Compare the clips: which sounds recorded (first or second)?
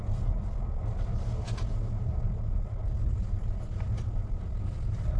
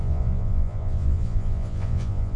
first